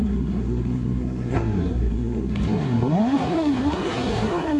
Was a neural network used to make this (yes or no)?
yes